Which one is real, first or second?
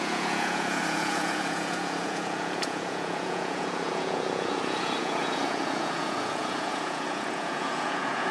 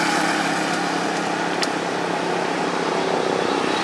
second